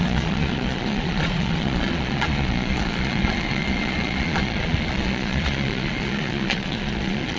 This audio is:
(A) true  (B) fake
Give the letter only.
B